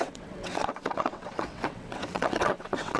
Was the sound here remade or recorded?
remade